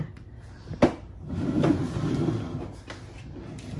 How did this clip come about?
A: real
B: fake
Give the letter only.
A